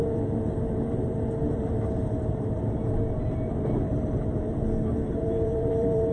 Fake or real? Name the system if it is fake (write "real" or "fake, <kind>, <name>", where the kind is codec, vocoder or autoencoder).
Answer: fake, vocoder, BigVGAN v2